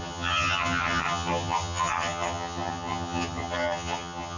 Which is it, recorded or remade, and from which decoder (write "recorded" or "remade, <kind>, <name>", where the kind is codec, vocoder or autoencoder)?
remade, vocoder, HiFi-GAN